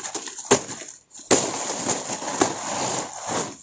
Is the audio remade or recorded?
recorded